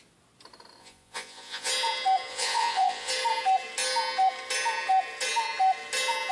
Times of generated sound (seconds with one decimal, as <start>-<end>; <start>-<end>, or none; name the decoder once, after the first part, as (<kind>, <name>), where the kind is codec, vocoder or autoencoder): 0.8-1.7 (vocoder, Vocos); 2.3-3.1